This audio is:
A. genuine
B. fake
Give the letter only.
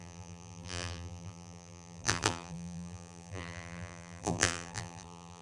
B